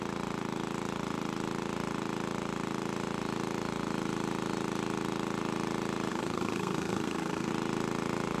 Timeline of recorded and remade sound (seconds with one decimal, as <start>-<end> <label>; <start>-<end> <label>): 0.0-6.1 recorded; 6.1-7.5 remade; 7.5-8.4 recorded